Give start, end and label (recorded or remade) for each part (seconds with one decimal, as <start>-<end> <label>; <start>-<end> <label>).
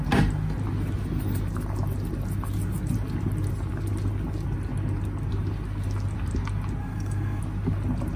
0.0-6.8 recorded; 6.8-7.4 remade; 7.4-8.2 recorded